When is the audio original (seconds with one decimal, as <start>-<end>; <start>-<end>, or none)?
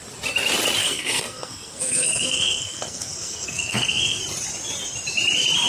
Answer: 0.0-0.8; 4.2-5.7